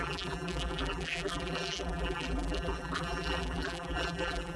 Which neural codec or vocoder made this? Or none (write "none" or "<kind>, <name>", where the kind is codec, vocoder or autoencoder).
vocoder, BigVGAN v2